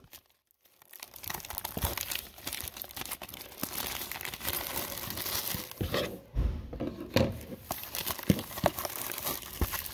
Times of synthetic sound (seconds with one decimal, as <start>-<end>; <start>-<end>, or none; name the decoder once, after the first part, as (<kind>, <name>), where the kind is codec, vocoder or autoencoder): none